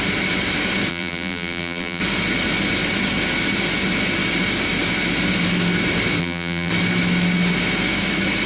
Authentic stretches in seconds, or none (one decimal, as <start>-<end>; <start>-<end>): 0.0-0.9; 2.0-6.2; 6.7-8.5